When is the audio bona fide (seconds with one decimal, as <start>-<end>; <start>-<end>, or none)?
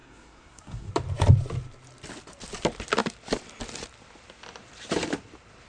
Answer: 0.9-5.7